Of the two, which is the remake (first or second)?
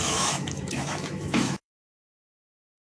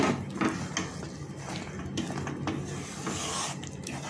first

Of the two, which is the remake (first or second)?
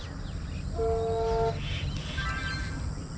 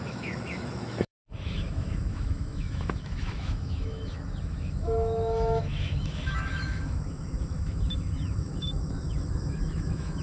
second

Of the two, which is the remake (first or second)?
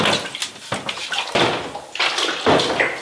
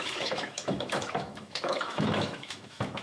second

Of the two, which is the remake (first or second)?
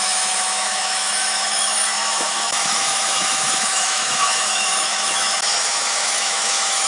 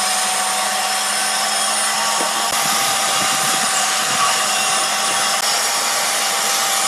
first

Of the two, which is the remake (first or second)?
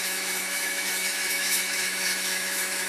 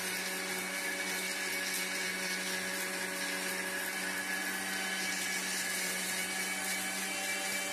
first